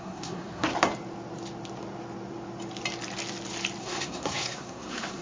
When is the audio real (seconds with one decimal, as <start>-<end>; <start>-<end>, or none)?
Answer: 0.7-3.8